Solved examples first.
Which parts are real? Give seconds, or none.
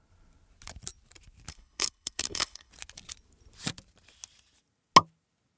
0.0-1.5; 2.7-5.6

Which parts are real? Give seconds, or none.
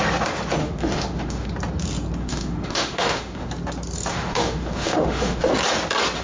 0.0-0.6; 1.5-2.2; 3.5-4.1; 5.5-6.2